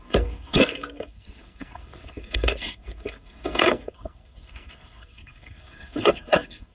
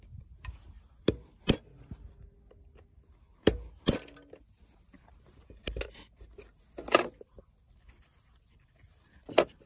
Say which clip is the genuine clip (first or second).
second